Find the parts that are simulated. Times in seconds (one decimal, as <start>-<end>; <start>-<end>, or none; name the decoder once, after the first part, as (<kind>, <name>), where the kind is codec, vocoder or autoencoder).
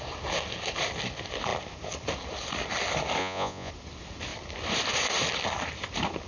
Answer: 3.2-3.7 (vocoder, Vocos)